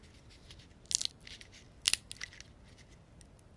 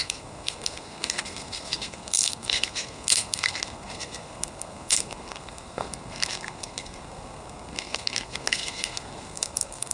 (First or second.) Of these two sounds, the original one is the first